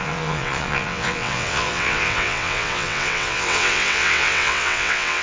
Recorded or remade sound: remade